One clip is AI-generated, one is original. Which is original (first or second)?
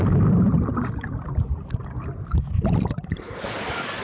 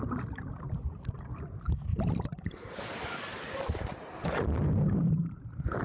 first